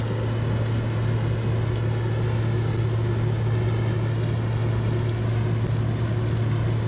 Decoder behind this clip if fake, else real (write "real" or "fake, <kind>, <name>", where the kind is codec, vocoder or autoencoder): real